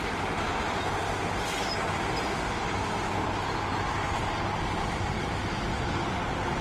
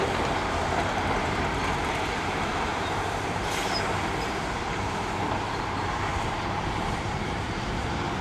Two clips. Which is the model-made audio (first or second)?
second